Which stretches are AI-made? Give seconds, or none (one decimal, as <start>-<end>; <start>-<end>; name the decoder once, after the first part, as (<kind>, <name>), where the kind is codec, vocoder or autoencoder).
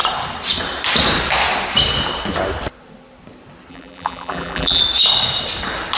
3.7-4.8 (vocoder, BigVGAN v2)